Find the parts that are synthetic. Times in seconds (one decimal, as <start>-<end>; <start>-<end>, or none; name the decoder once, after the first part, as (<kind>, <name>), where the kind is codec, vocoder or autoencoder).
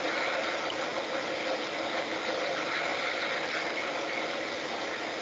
none